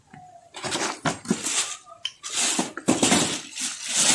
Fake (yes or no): no